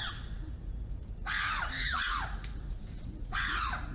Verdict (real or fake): fake